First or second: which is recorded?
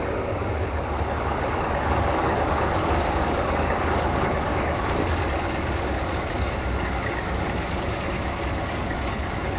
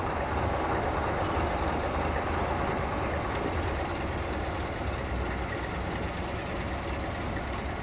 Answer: second